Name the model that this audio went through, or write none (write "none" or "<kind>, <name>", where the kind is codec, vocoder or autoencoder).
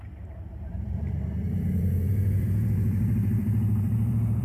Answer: vocoder, BigVGAN v2